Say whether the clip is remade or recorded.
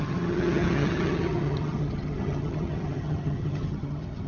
remade